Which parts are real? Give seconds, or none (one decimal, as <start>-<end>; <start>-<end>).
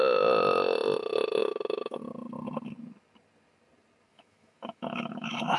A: 0.0-1.4; 2.0-4.1